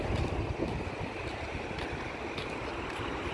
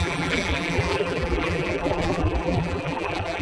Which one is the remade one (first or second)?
second